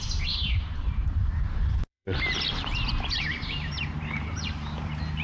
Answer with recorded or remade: remade